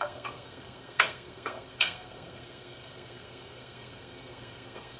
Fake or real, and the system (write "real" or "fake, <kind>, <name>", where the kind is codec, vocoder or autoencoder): fake, codec, SNAC